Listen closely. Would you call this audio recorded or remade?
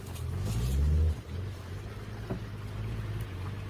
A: recorded